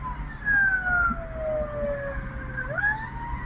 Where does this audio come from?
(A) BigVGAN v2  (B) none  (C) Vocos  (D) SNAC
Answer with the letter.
B